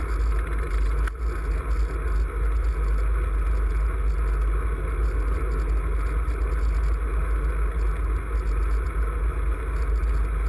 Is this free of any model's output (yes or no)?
yes